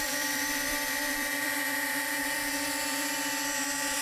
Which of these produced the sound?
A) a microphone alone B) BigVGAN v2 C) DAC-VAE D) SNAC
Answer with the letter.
B